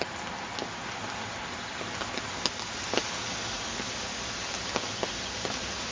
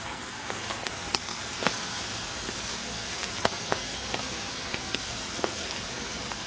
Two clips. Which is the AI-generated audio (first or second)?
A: second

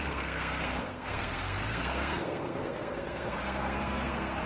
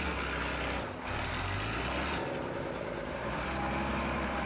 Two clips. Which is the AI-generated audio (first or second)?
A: first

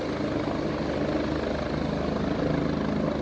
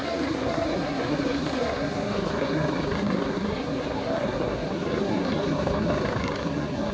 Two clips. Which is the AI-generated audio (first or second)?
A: second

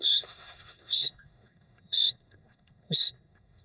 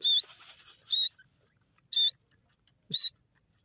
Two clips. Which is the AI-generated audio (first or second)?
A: first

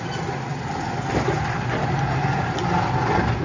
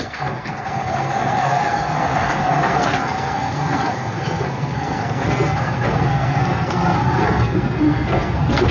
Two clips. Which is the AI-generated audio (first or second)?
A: second